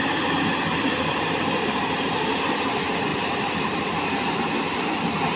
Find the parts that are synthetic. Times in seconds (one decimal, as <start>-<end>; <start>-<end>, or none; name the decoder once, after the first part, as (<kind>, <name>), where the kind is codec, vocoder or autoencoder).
0.7-2.2 (vocoder, BigVGAN v2); 3.1-4.3